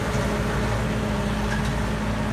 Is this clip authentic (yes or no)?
yes